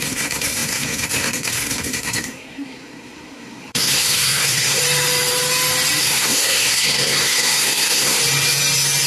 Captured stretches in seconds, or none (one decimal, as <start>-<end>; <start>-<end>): 4.8-6.0; 8.2-9.1